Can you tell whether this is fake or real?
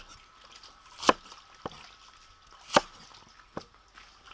real